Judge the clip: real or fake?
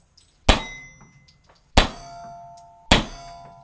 real